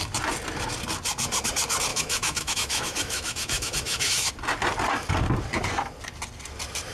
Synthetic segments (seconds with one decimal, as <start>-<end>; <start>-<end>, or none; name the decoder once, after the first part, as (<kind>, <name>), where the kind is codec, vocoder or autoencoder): 1.9-4.3 (autoencoder, DAC-VAE)